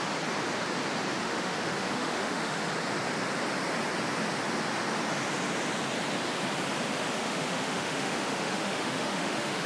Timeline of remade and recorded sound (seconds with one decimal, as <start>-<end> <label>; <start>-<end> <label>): 0.0-1.2 recorded; 1.2-2.7 remade; 2.7-7.2 recorded; 7.2-9.7 remade